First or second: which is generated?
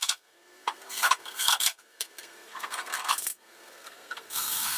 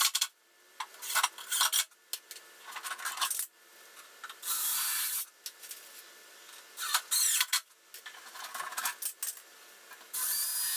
first